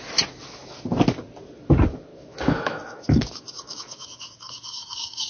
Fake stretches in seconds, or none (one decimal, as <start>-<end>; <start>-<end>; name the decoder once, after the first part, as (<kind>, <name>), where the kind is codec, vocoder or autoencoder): 2.1-5.3 (autoencoder, DAC-VAE)